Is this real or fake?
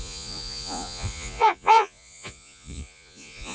fake